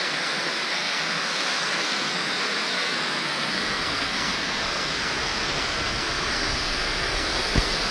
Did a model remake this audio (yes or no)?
yes